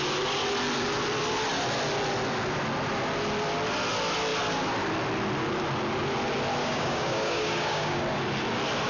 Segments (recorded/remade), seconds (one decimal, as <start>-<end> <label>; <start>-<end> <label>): 0.0-6.6 recorded; 6.6-8.0 remade; 8.0-8.9 recorded